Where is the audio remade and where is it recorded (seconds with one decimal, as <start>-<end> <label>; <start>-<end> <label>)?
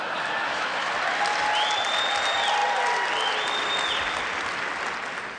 0.0-0.4 recorded; 0.4-0.9 remade; 0.9-5.4 recorded